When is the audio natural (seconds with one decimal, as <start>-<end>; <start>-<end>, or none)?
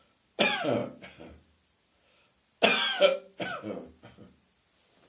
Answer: 0.0-5.1